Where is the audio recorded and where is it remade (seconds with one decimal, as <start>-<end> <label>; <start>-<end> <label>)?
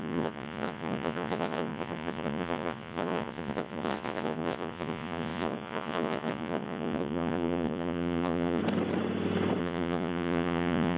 0.0-8.6 remade; 8.6-9.6 recorded; 9.6-11.0 remade